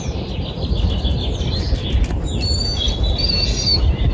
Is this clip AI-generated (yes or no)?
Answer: no